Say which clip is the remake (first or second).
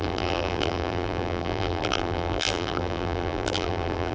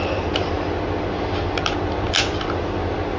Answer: first